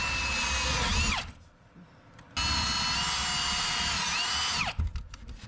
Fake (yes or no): no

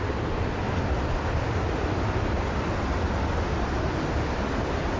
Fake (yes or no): no